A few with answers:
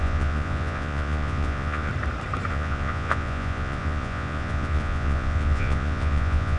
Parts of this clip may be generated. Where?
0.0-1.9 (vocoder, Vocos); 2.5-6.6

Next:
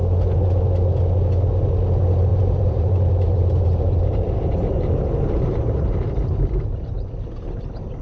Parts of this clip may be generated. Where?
2.3-7.1 (vocoder, BigVGAN v2)